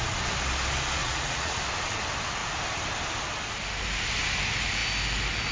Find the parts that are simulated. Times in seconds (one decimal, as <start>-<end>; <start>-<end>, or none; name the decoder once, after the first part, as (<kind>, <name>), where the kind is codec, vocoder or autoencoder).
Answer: 1.0-1.6 (vocoder, Vocos)